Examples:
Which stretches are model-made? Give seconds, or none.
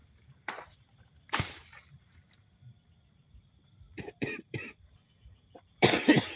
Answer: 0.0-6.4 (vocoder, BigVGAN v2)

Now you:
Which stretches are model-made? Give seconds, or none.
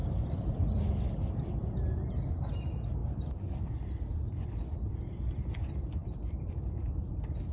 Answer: 0.0-2.3 (vocoder, BigVGAN v2); 3.0-5.5; 6.0-7.1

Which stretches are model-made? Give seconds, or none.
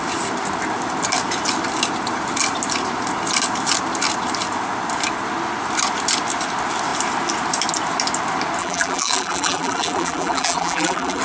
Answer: 8.6-11.2 (vocoder, BigVGAN v2)